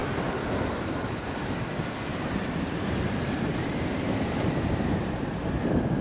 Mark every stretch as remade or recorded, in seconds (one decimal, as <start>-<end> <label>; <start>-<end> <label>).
0.0-2.1 recorded; 2.1-5.1 remade; 5.1-6.0 recorded